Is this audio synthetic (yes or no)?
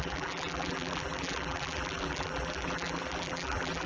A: yes